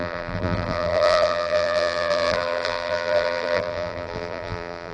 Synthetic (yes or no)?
yes